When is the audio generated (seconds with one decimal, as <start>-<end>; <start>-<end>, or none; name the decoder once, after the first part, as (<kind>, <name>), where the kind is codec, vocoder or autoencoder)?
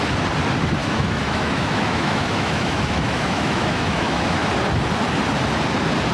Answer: 0.8-4.5 (autoencoder, DAC-VAE)